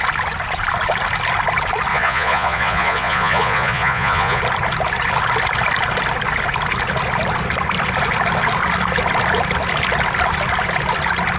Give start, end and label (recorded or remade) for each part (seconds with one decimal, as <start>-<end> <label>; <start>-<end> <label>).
0.0-1.9 recorded; 1.9-4.4 remade; 4.4-11.4 recorded